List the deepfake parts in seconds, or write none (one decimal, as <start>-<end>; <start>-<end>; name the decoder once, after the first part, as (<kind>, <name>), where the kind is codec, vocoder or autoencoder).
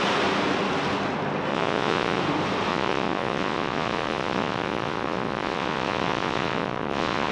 1.5-2.2 (vocoder, Vocos); 2.7-7.3